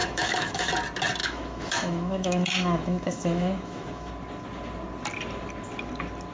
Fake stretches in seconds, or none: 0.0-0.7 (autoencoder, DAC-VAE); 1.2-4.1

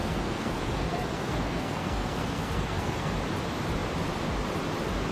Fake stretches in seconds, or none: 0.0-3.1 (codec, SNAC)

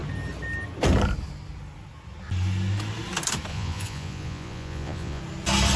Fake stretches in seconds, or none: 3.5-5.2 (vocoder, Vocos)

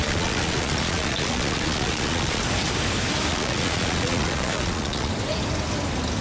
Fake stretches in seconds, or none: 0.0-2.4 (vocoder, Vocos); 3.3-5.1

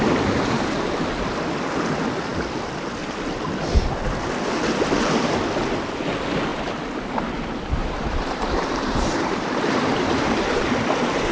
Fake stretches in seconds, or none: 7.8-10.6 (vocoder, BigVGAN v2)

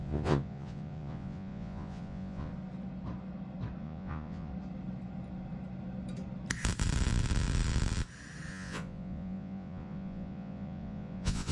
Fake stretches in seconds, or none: 0.0-2.5 (vocoder, Vocos); 3.8-4.5; 8.5-11.5

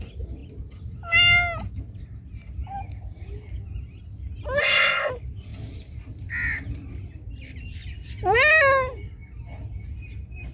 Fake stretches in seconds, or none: 4.6-5.1 (codec, ZipCodec)

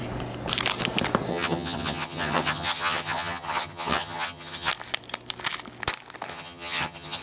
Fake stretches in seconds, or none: 1.3-4.7 (vocoder, HiFi-GAN); 6.3-7.2